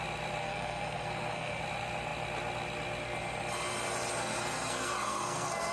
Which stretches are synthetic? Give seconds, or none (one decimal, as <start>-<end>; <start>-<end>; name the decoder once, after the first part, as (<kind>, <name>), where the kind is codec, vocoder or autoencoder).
0.4-1.6 (codec, SNAC); 4.2-5.7